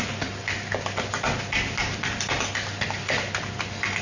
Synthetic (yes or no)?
no